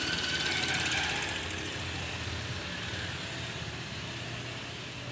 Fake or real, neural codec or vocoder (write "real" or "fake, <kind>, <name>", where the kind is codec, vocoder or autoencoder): real